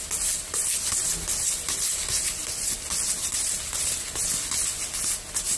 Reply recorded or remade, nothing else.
recorded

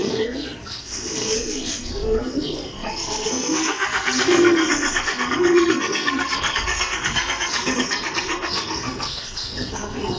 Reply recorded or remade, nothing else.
remade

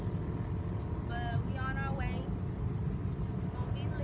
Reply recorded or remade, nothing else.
recorded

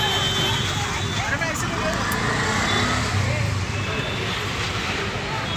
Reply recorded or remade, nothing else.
recorded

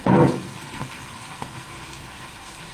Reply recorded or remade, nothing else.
remade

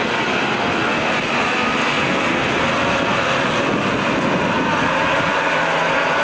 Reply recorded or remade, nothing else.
recorded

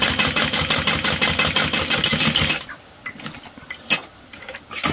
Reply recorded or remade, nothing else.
recorded